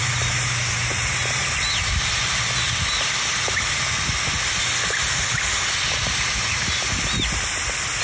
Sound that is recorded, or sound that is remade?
recorded